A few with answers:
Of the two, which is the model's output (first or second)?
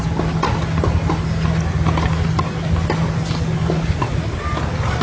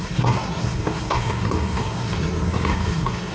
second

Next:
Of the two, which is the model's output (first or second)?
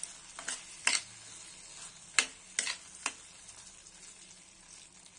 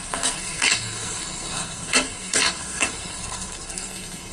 second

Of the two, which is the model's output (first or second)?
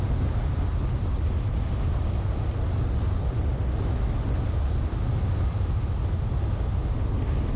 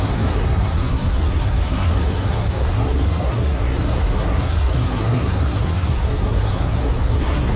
second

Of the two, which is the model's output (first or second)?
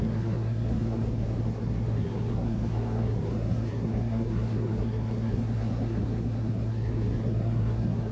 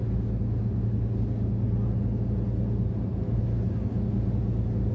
first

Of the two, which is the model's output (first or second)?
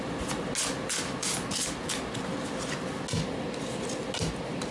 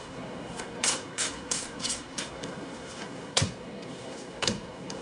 second